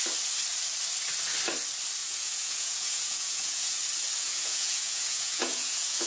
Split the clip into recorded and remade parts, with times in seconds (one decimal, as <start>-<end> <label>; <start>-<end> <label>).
0.0-2.0 recorded; 2.0-3.8 remade; 3.8-4.2 recorded; 4.2-6.1 remade